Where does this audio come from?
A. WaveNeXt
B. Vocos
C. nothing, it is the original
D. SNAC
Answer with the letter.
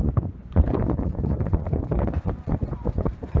B